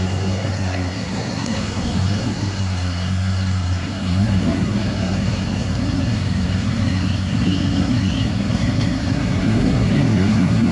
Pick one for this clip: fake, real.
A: fake